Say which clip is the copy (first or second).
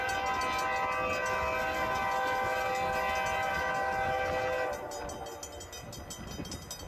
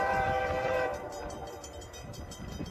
second